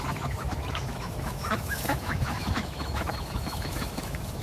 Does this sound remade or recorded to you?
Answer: remade